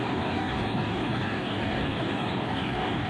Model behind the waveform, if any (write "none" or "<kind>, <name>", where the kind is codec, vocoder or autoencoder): codec, DAC